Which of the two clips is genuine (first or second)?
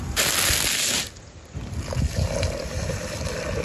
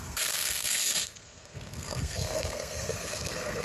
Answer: first